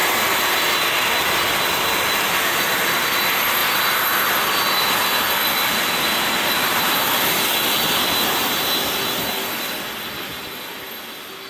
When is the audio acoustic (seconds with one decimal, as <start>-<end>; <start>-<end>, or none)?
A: 0.0-11.5

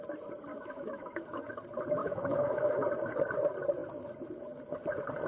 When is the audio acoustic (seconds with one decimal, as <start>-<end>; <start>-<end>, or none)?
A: 0.0-0.5; 1.5-2.0; 2.9-5.3

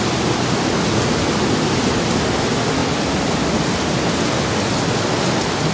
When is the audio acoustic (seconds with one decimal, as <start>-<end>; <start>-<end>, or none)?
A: 0.0-5.7

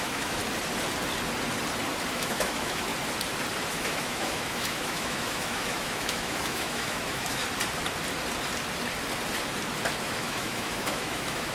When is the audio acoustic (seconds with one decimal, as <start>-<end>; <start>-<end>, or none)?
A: 0.4-2.1; 2.9-3.7; 7.4-10.0

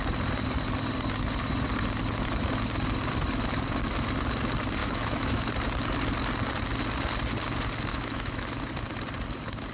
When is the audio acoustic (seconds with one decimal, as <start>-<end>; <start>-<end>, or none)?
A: 0.0-4.8; 5.5-7.9; 8.6-9.7

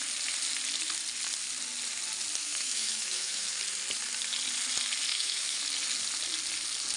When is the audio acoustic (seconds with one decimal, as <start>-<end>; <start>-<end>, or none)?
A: 0.0-2.4; 3.6-5.1; 5.6-7.0

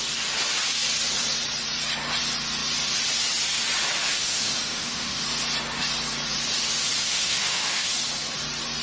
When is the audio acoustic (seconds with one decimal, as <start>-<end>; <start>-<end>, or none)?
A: 0.0-4.0; 5.2-7.0; 7.9-8.8